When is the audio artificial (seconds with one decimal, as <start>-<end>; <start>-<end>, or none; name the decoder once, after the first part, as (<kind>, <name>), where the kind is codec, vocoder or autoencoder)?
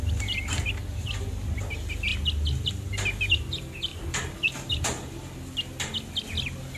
3.9-5.1 (vocoder, BigVGAN v2)